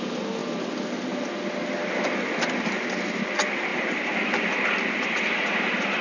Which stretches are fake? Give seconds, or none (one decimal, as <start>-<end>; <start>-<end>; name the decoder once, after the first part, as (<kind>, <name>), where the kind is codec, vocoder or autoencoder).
none